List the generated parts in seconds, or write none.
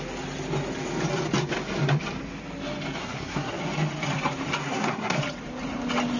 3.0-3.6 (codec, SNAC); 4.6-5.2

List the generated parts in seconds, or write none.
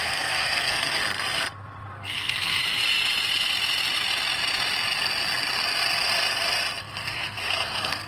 0.0-1.0 (codec, SNAC); 1.9-2.6; 6.8-8.1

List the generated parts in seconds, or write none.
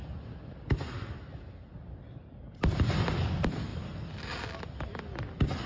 none